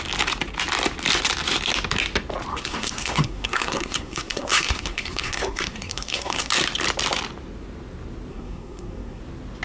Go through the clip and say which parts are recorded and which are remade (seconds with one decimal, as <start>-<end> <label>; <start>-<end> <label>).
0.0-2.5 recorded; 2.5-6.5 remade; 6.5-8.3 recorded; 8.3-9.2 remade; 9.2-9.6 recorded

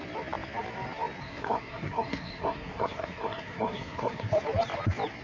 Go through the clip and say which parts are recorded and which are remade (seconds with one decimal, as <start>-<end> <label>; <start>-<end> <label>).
0.0-1.2 recorded; 1.2-4.3 remade; 4.3-5.2 recorded

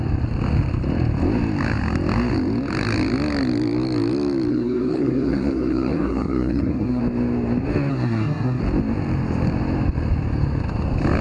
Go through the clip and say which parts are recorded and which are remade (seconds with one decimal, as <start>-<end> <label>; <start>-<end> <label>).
0.0-4.5 recorded; 4.5-7.0 remade; 7.0-7.9 recorded; 7.9-8.6 remade; 8.6-11.2 recorded

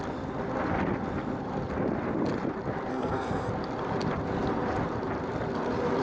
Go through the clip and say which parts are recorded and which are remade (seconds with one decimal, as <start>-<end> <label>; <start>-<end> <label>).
0.0-2.9 recorded; 2.9-3.5 remade; 3.5-6.0 recorded